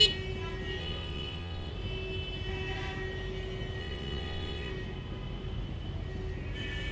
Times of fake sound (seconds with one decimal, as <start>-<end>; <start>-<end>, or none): 0.8-1.7; 3.8-4.7